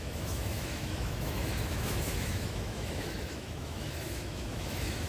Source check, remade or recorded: remade